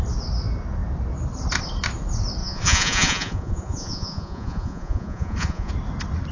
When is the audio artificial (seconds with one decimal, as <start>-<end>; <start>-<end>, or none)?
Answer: 2.4-5.7